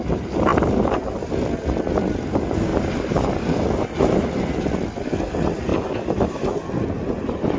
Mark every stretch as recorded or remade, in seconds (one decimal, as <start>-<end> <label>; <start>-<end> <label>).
0.0-0.5 recorded; 0.5-1.6 remade; 1.6-2.7 recorded; 2.7-3.4 remade; 3.4-7.6 recorded